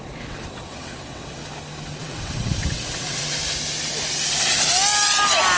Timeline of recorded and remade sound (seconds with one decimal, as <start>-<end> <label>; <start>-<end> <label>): 0.0-1.4 remade; 1.4-2.0 recorded; 2.0-3.2 remade; 3.2-5.6 recorded

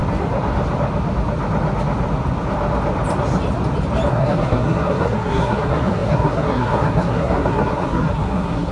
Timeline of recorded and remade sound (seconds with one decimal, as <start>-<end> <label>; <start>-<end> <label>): 0.0-4.1 recorded; 4.1-8.7 remade

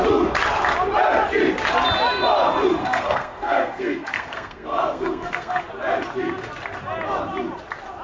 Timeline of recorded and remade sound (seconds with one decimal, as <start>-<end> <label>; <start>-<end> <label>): 0.0-2.8 recorded; 2.8-5.6 remade; 5.6-8.0 recorded

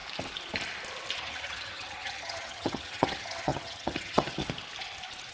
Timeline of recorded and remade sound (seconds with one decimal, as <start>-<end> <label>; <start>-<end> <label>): 0.0-1.2 recorded; 1.2-4.4 remade; 4.4-5.3 recorded

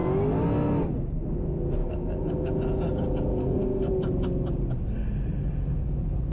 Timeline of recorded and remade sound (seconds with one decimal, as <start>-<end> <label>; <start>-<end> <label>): 0.0-1.8 recorded; 1.8-2.5 remade; 2.5-3.4 recorded; 3.4-3.9 remade; 3.9-6.3 recorded

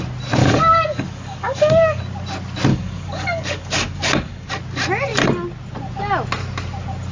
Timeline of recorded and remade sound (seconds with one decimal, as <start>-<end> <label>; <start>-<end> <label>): 0.0-0.4 recorded; 0.4-2.0 remade; 2.0-2.7 recorded; 2.7-4.5 remade; 4.5-7.1 recorded